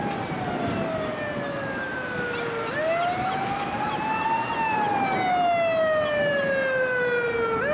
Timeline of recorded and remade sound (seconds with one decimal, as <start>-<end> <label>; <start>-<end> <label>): 0.0-7.7 recorded